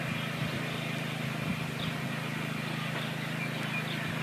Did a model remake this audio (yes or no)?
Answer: no